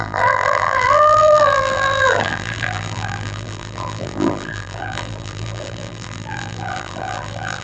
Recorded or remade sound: remade